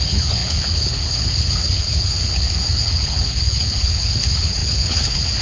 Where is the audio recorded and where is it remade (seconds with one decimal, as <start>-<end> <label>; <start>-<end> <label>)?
0.0-5.4 remade